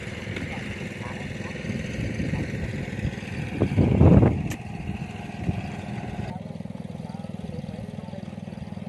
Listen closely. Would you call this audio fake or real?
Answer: real